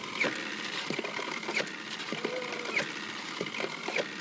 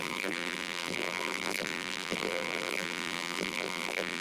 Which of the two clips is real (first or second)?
first